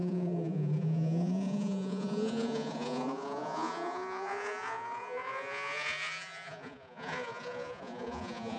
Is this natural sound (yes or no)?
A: no